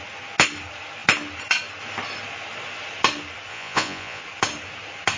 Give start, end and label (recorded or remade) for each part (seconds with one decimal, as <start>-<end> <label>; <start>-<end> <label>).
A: 0.0-3.5 recorded; 3.5-4.2 remade; 4.2-5.2 recorded